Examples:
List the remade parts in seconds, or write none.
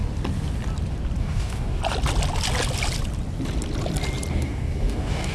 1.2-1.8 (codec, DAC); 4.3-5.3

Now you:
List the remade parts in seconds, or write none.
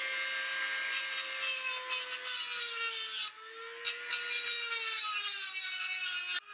none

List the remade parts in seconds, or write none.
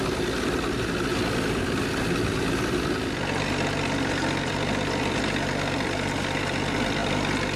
none